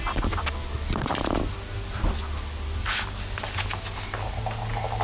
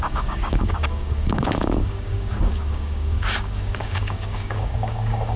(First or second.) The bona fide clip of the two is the first